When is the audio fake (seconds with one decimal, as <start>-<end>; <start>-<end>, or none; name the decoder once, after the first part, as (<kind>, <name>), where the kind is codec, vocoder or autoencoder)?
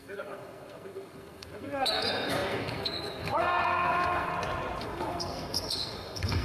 0.0-4.3 (codec, SNAC); 4.8-6.4